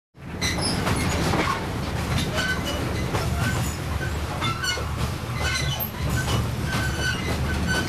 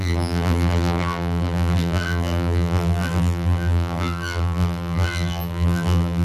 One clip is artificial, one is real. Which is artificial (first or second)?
second